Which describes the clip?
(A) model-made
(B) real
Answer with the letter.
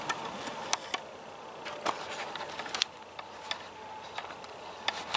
B